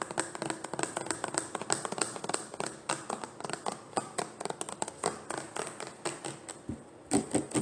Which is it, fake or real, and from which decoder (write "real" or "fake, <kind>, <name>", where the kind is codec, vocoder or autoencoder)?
real